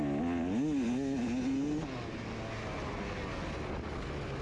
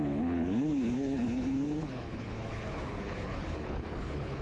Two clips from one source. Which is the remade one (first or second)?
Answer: second